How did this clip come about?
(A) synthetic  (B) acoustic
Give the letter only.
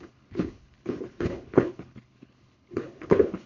A